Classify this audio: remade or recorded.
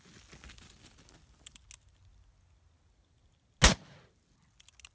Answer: recorded